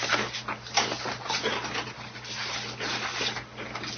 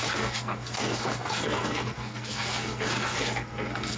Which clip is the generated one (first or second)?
second